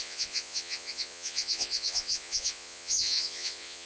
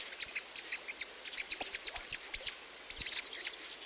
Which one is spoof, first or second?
first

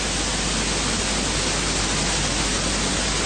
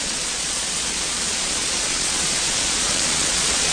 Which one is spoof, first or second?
second